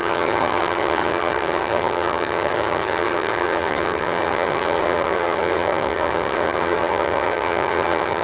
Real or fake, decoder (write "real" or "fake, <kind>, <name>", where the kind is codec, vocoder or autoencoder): fake, vocoder, HiFi-GAN